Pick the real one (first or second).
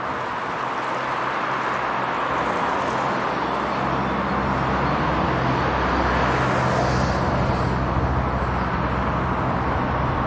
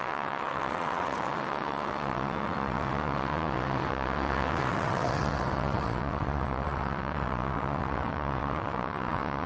first